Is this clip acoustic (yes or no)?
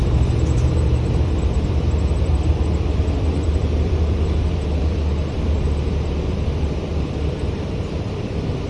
no